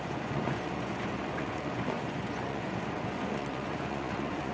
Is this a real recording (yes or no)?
no